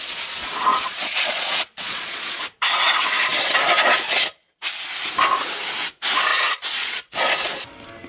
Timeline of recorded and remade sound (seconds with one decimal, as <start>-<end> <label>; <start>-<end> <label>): 0.0-0.7 recorded; 0.7-2.4 remade; 2.4-6.3 recorded; 6.3-7.3 remade; 7.3-8.1 recorded